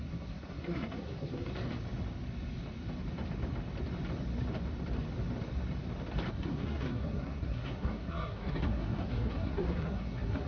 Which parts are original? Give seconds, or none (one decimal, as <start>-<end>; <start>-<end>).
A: 1.5-6.3

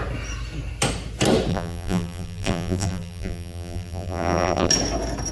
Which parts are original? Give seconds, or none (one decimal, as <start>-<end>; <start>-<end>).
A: 0.0-1.5; 4.7-5.3

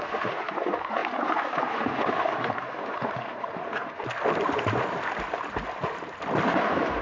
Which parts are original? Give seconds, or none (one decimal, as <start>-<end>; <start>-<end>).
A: 0.0-7.0

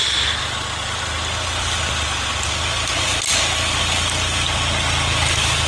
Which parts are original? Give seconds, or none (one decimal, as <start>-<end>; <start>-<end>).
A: 1.0-5.7